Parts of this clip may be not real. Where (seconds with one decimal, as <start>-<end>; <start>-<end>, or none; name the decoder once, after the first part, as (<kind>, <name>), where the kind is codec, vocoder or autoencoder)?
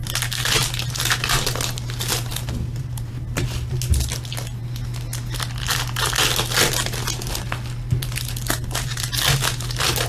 2.1-3.1 (vocoder, BigVGAN v2)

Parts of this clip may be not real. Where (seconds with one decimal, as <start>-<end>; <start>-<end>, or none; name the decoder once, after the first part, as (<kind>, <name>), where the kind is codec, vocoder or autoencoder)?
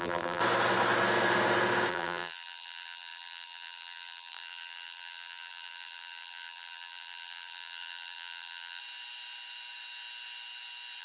0.0-0.4 (vocoder, BigVGAN v2); 1.9-8.8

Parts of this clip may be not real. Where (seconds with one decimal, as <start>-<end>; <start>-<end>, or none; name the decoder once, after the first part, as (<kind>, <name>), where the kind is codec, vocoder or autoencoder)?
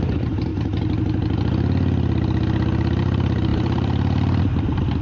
0.0-0.5 (vocoder, BigVGAN v2); 3.0-5.0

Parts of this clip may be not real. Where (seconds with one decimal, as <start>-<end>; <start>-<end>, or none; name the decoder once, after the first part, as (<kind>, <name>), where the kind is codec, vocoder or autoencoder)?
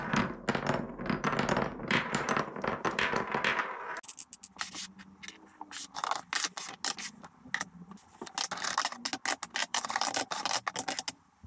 1.7-3.1 (vocoder, BigVGAN v2); 9.6-10.2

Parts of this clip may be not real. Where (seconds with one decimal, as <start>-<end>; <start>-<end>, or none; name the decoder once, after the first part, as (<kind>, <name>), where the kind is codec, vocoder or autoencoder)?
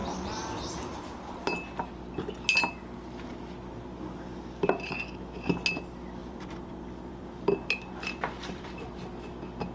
6.2-8.7 (vocoder, BigVGAN v2)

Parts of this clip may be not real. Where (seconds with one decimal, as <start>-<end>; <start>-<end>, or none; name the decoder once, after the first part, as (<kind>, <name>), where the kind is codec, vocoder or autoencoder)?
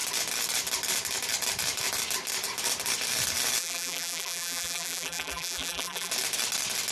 3.6-6.1 (vocoder, BigVGAN v2)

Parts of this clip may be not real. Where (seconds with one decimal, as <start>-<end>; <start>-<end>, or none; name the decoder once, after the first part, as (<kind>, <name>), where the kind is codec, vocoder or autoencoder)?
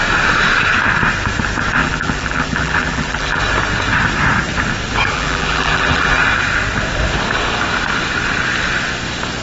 1.8-3.4 (vocoder, BigVGAN v2); 5.1-6.2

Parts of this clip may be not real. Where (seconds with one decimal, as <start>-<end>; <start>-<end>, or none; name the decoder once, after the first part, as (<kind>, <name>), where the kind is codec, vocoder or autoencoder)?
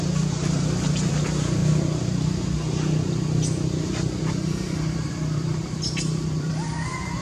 0.0-1.6 (vocoder, BigVGAN v2); 4.3-5.5; 6.2-7.2